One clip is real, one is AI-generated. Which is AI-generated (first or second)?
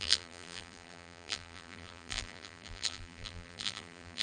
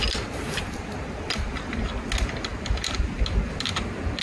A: first